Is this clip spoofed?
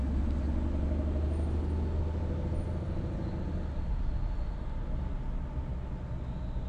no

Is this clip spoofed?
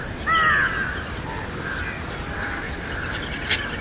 no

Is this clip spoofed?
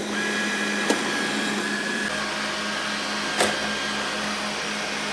no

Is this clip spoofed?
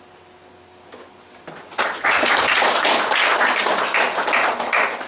no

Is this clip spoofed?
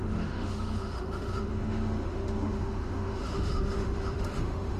yes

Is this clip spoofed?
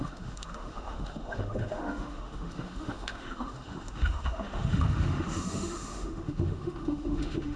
yes